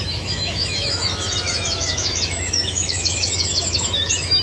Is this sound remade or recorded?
remade